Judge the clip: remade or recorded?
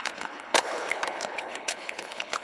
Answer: remade